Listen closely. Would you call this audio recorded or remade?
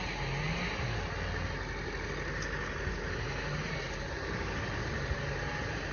recorded